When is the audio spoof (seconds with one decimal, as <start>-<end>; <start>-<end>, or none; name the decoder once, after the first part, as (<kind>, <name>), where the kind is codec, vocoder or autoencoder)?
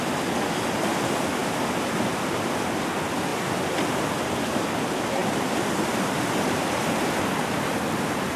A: 1.4-2.8 (vocoder, BigVGAN v2); 3.3-4.0; 5.2-7.7